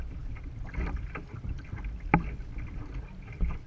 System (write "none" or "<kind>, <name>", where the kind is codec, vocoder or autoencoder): none